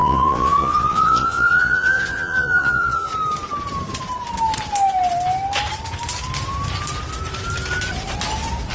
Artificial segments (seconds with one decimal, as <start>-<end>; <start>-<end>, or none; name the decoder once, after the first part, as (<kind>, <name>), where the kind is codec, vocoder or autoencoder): 0.0-3.1 (vocoder, Vocos)